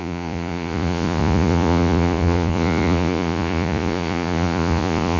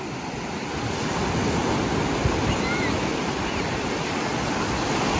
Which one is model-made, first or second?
first